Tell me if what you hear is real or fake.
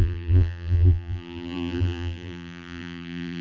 fake